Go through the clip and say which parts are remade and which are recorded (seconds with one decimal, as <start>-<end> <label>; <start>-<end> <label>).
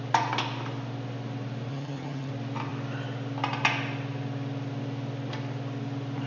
0.0-1.7 recorded; 1.7-2.3 remade; 2.3-6.3 recorded